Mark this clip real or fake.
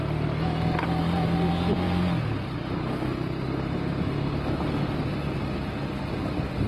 real